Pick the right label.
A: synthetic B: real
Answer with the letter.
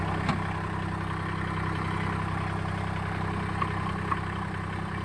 B